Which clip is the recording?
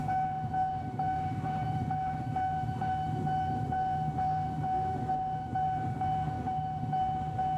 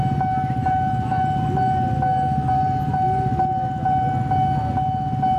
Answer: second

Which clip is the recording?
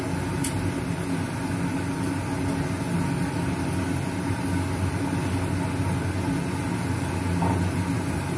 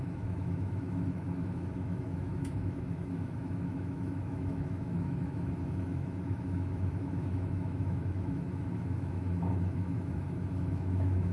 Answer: first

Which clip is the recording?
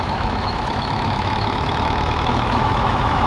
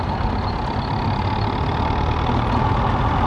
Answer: second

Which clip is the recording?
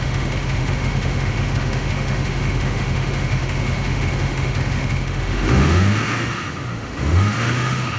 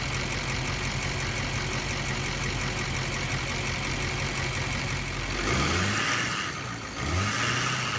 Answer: second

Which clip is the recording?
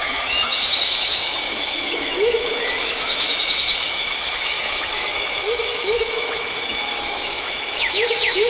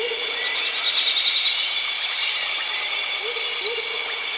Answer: second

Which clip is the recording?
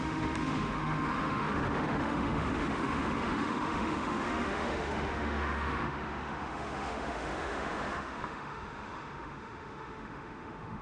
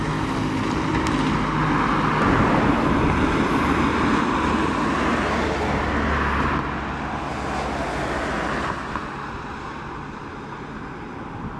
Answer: second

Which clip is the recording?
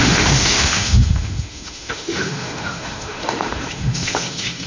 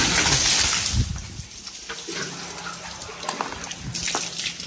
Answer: second